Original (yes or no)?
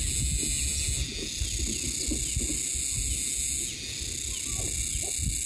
yes